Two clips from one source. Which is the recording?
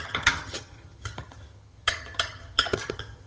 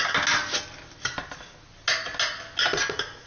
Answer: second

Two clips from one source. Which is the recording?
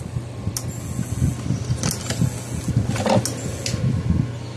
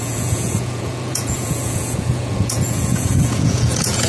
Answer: first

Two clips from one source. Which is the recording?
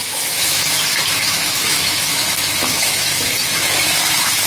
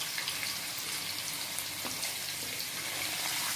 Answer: second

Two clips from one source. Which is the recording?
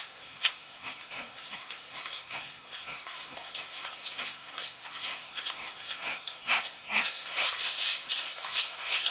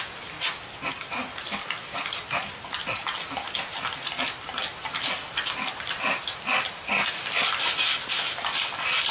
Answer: second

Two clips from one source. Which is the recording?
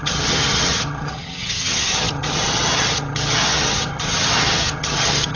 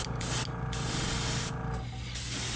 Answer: second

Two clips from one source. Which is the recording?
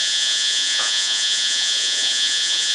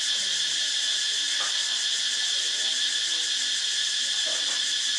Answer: second